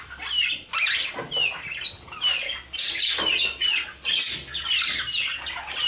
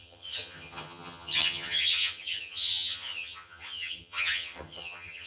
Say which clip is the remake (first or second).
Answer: second